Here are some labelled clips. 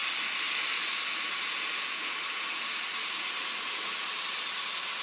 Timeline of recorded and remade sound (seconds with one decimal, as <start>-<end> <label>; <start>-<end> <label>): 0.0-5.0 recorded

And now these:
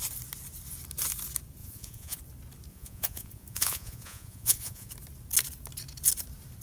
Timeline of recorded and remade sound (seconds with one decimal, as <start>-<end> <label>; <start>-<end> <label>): 0.0-1.6 recorded; 1.6-2.2 remade; 2.2-2.7 recorded; 2.7-4.9 remade; 4.9-6.6 recorded

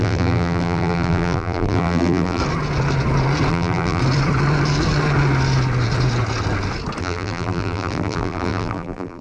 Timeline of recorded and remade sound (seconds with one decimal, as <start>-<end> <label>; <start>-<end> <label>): 0.0-2.4 remade; 2.4-3.5 recorded; 3.5-4.0 remade; 4.0-7.0 recorded; 7.0-9.2 remade

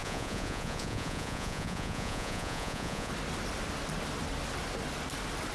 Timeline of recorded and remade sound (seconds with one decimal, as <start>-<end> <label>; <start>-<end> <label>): 0.0-3.1 remade; 3.1-5.5 recorded

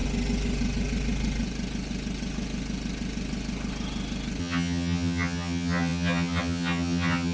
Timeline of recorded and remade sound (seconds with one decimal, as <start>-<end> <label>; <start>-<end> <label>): 0.0-4.4 recorded; 4.4-7.3 remade

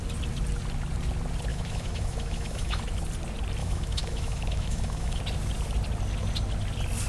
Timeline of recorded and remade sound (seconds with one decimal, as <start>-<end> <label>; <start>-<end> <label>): 0.0-1.5 recorded; 1.5-2.8 remade; 2.8-3.6 recorded; 3.6-5.2 remade; 5.2-7.1 recorded